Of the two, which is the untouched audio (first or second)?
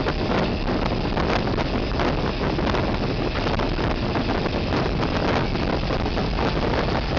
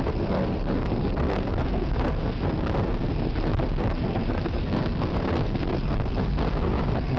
first